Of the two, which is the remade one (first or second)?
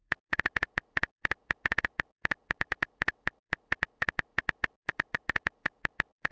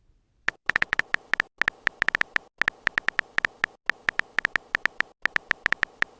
first